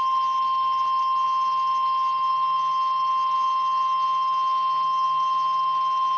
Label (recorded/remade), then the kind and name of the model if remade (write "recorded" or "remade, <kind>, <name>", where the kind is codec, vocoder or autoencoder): remade, autoencoder, DAC-VAE